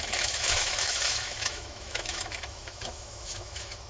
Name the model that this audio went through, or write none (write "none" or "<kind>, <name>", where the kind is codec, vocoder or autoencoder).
autoencoder, DAC-VAE